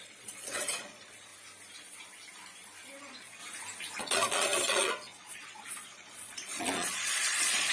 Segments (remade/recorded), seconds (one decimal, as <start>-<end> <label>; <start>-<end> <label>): 0.0-1.3 remade; 1.3-3.0 recorded; 3.0-3.4 remade; 3.4-4.0 recorded; 4.0-7.7 remade